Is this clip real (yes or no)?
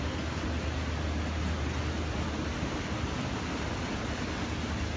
yes